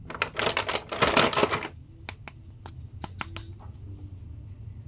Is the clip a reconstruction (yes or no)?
no